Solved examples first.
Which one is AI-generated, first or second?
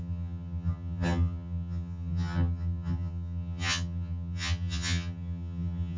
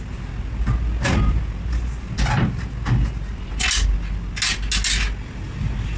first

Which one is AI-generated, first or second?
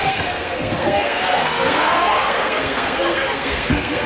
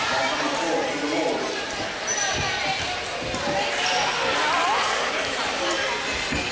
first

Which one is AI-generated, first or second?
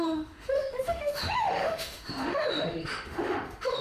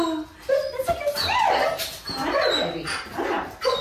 first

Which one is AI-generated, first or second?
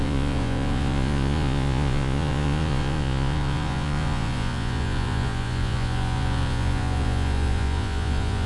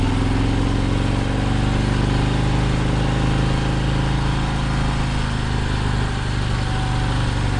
first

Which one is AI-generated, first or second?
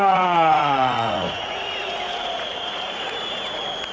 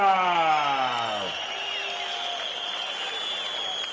first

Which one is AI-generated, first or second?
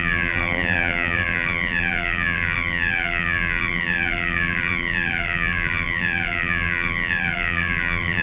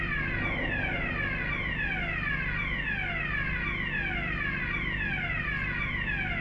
first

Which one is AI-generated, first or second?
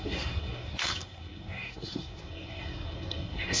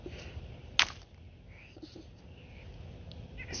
first